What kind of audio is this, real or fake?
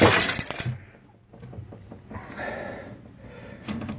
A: real